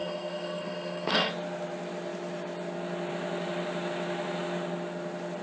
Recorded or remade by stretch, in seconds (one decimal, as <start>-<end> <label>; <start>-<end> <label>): 0.0-1.3 remade; 1.3-5.4 recorded